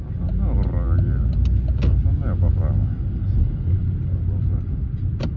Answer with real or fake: real